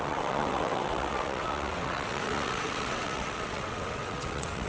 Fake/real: fake